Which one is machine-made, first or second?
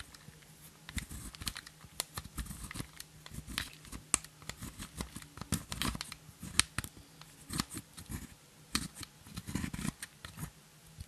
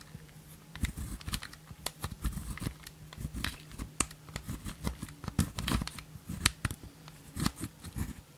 second